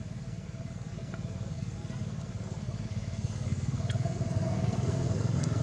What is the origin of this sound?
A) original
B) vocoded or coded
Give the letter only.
B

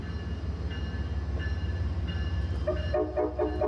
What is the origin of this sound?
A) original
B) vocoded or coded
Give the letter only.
A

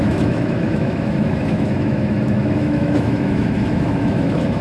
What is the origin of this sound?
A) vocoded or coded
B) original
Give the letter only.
A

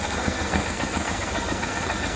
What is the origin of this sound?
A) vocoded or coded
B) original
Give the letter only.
A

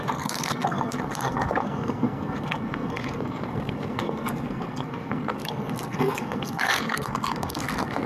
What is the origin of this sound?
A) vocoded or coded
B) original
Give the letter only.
A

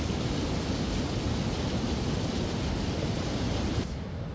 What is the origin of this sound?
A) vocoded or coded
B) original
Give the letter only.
B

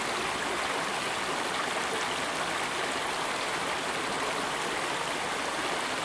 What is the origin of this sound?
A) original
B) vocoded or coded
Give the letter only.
A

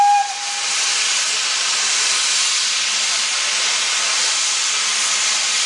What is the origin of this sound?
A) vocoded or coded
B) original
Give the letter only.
B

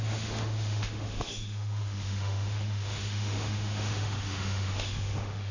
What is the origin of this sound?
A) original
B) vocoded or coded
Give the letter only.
B